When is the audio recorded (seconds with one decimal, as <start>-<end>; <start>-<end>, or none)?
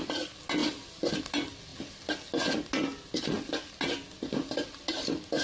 0.0-5.4